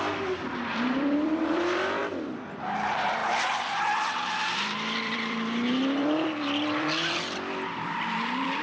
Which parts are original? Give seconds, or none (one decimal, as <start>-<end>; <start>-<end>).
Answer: 2.0-2.6; 3.2-3.8